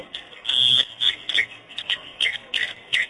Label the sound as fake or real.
fake